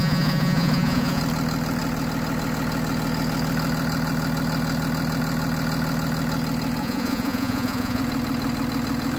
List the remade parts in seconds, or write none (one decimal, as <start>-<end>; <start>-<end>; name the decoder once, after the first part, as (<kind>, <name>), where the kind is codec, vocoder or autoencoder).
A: 0.0-1.2 (vocoder, Vocos); 6.8-8.0